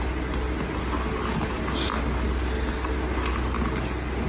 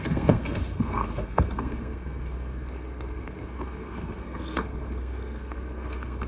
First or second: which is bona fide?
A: first